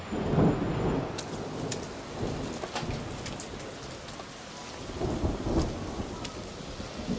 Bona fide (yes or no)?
yes